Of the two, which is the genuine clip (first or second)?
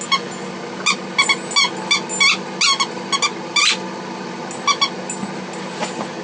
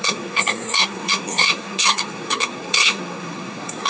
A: first